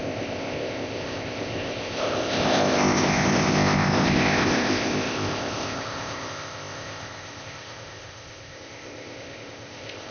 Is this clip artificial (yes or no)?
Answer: yes